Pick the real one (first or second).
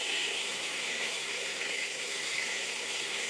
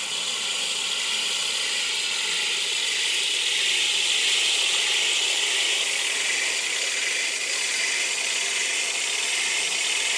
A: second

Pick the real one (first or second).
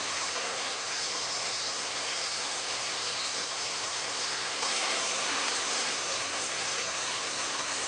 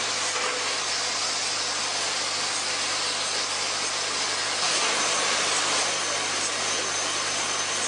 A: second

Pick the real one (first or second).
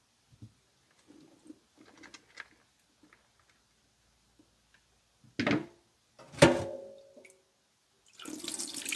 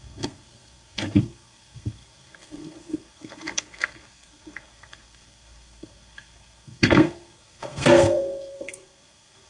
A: first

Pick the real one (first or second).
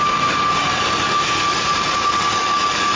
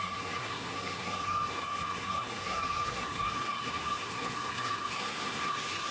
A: first